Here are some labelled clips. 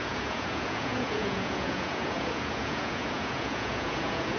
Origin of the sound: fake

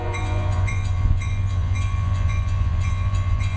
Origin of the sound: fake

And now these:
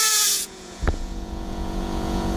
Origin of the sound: fake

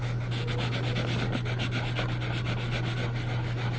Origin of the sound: real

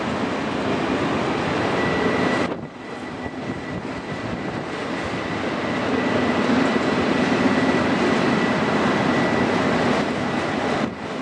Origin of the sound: real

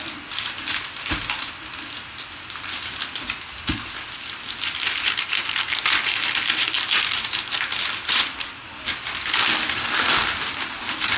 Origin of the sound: real